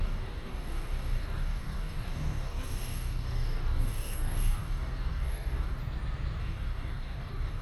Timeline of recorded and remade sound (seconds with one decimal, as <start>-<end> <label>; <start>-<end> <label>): 0.0-5.8 remade; 5.8-6.4 recorded; 6.4-7.6 remade